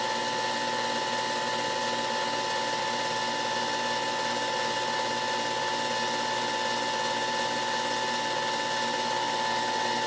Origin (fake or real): real